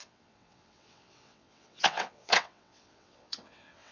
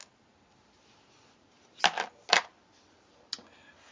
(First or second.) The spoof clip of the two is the first